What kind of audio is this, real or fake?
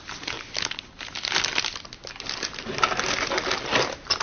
real